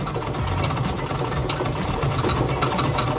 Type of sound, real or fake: real